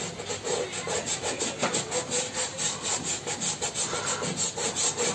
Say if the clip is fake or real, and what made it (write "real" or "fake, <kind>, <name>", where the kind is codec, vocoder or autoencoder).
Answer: real